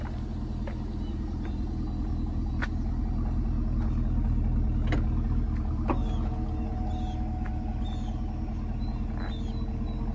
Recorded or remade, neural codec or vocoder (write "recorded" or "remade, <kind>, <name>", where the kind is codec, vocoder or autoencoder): recorded